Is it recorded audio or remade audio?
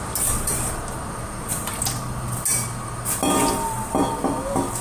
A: recorded